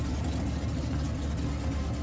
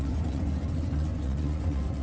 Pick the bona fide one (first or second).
first